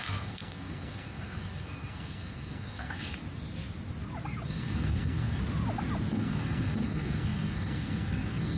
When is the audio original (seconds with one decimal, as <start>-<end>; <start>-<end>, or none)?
3.2-4.5; 5.4-6.1

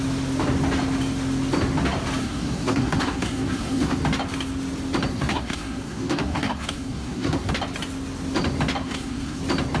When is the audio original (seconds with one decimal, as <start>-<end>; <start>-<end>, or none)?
0.0-2.2; 4.0-5.1; 7.5-8.8; 9.4-9.8

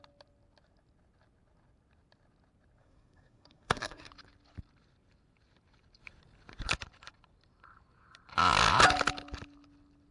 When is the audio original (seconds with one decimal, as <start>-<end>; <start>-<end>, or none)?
0.0-2.8; 4.1-10.1

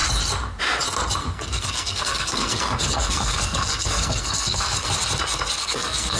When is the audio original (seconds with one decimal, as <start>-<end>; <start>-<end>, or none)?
0.0-1.2; 4.9-5.6

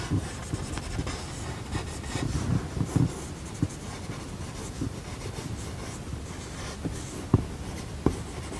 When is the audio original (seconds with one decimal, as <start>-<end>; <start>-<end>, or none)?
0.0-8.6

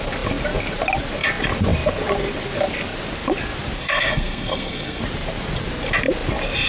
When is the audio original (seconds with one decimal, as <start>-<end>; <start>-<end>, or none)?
0.0-3.8; 5.0-6.7